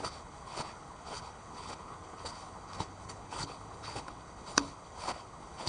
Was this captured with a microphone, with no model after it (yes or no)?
no